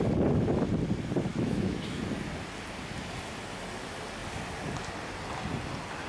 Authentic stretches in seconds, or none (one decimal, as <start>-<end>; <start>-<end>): 0.0-1.3; 2.0-6.1